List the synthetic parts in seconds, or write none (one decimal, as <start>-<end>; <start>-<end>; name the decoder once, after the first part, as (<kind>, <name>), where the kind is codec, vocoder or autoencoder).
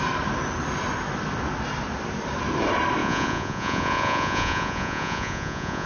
3.0-5.9 (vocoder, Vocos)